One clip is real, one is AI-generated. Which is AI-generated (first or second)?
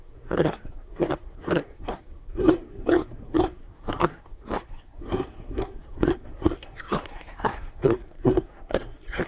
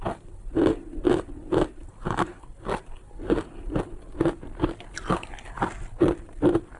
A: first